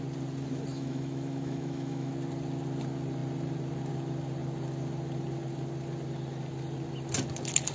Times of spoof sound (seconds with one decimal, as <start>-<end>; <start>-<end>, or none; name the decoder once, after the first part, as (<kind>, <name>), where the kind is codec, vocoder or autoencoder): 0.7-2.1 (autoencoder, DAC-VAE)